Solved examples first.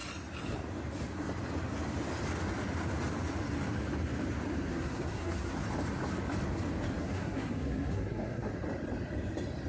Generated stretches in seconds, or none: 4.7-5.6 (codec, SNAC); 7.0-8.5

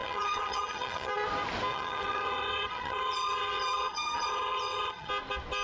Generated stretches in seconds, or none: 0.0-1.1 (vocoder, HiFi-GAN); 1.7-5.1

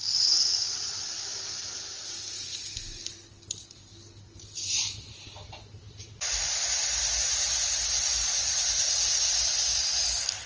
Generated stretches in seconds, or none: none

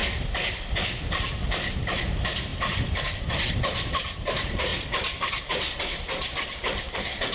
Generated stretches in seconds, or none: 1.1-4.7 (vocoder, BigVGAN v2); 5.5-7.3

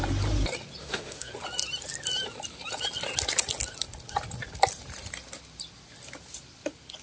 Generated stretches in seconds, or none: 0.8-1.3 (autoencoder, DAC-VAE)

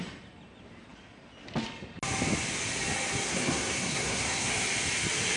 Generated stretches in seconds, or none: 3.2-4.5 (codec, SNAC)

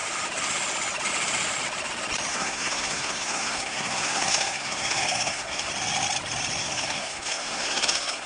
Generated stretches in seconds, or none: 2.3-5.7 (codec, SNAC); 6.6-8.3